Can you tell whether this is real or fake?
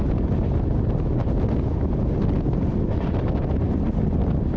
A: real